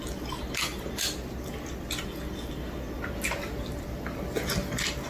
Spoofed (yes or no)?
no